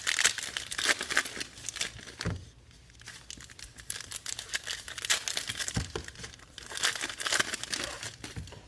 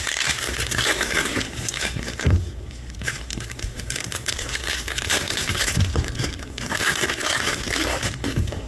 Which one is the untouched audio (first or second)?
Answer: first